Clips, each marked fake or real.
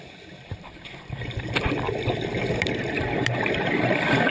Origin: real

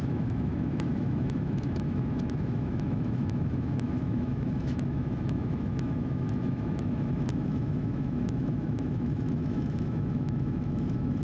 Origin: fake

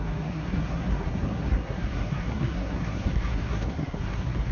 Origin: fake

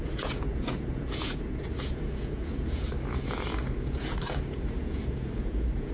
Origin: fake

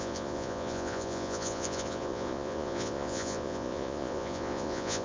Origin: fake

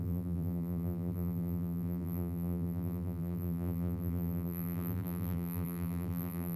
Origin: fake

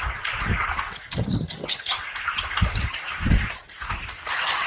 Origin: real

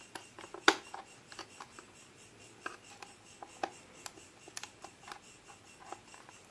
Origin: real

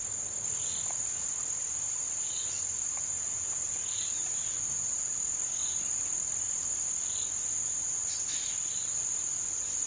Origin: real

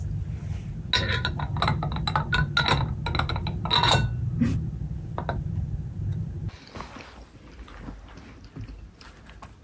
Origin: real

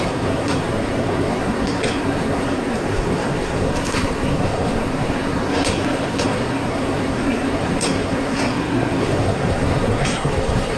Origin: fake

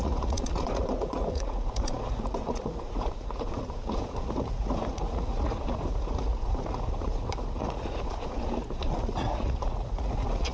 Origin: fake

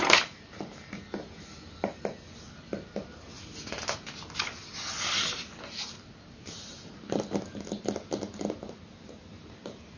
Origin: real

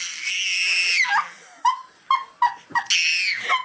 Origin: real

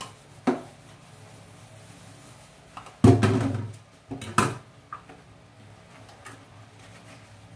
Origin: real